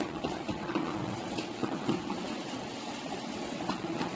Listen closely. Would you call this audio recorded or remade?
remade